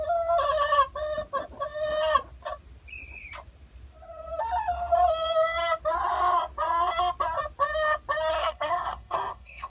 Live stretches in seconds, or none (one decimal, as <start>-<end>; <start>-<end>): 0.0-8.3